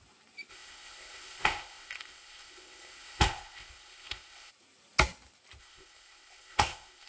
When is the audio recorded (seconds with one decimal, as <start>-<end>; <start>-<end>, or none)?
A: 0.0-0.5; 4.5-5.6